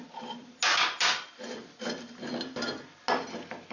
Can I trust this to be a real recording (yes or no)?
yes